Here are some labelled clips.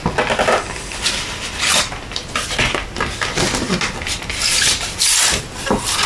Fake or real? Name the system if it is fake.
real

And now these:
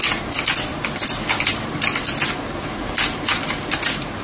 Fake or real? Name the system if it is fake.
real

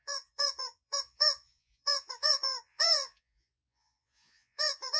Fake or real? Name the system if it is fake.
fake, vocoder, Vocos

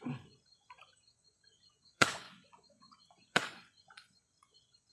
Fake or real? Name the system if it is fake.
fake, vocoder, Vocos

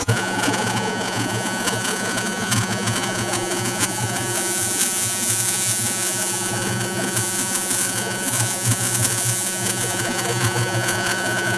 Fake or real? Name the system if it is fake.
fake, vocoder, Vocos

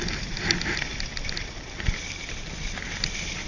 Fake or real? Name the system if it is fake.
real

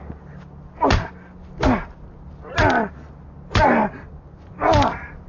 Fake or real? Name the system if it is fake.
real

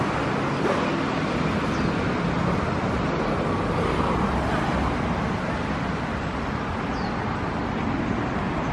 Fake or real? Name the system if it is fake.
real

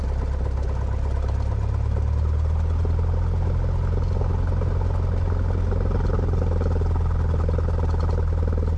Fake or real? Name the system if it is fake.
real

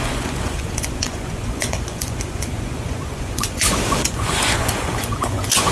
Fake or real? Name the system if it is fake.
fake, vocoder, Vocos